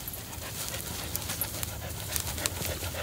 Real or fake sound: real